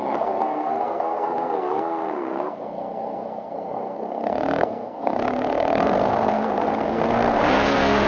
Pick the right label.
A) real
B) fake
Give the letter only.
B